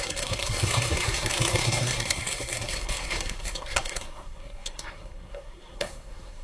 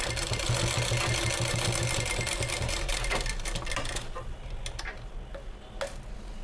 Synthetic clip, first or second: first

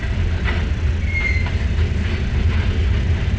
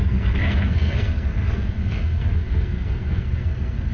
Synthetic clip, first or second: second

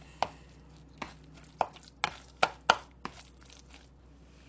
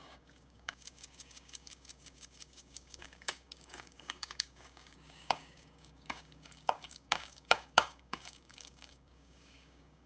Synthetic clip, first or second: second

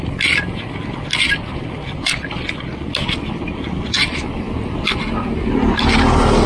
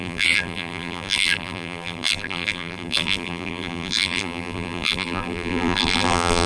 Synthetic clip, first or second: second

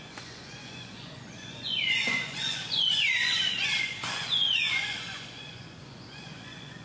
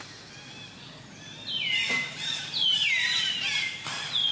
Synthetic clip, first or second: first